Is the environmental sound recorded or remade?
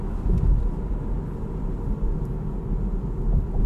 recorded